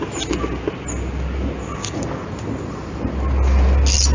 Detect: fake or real real